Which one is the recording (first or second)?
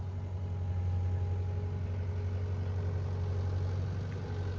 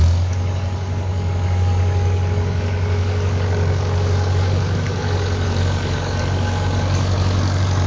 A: first